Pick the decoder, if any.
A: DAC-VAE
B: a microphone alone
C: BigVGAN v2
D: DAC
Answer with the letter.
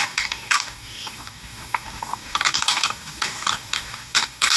D